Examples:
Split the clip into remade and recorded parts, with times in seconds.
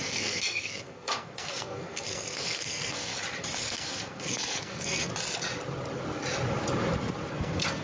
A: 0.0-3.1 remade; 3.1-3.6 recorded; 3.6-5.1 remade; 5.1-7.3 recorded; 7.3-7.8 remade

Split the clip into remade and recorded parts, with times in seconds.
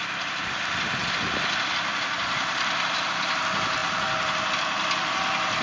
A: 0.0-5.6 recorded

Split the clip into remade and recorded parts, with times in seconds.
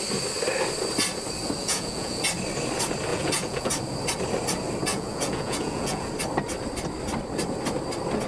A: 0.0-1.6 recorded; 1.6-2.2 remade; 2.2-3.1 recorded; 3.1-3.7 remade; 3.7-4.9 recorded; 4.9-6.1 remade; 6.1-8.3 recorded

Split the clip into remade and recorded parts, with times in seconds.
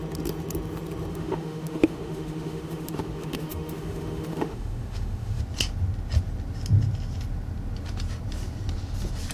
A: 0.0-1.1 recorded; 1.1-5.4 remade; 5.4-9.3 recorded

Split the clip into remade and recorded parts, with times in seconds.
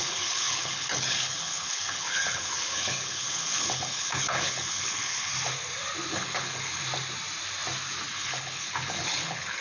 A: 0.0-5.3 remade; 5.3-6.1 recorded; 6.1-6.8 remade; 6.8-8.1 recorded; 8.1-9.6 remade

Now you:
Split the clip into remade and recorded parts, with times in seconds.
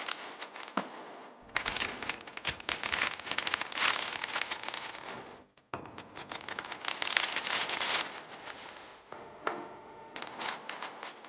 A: 0.0-7.3 recorded; 7.3-7.9 remade; 7.9-8.4 recorded; 8.4-10.2 remade; 10.2-11.3 recorded